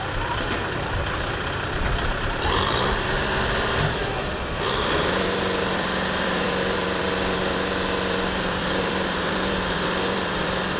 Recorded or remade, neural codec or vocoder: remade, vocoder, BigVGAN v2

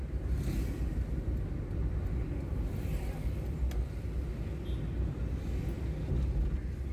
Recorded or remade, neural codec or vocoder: recorded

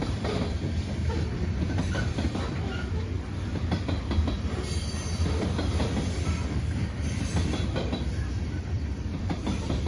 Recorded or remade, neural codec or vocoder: remade, vocoder, BigVGAN v2